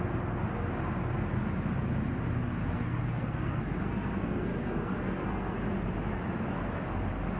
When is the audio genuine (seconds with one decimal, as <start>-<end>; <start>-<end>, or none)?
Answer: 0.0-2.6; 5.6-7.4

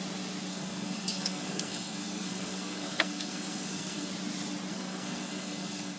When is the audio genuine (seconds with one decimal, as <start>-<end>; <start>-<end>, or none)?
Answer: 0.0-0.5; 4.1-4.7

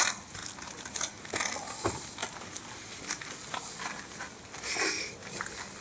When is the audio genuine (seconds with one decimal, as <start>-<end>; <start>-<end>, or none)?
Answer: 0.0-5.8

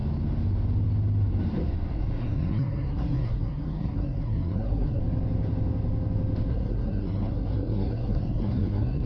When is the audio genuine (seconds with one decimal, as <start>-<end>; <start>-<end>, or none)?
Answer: 0.0-2.2; 5.0-6.5

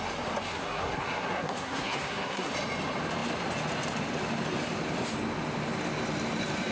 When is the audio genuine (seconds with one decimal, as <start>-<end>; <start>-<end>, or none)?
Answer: 0.0-0.5; 2.5-6.7

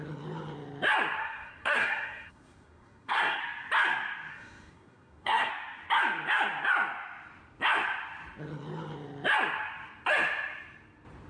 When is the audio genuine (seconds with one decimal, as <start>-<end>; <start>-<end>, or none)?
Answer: 0.0-1.2; 3.4-4.3; 5.5-11.3